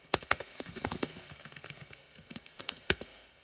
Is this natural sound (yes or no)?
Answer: no